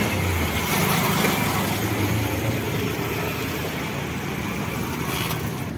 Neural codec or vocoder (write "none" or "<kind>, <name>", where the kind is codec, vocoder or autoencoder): none